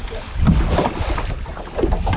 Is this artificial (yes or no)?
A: yes